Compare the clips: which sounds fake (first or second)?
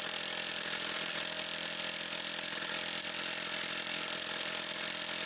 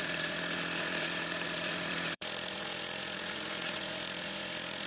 second